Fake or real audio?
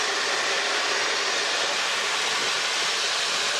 real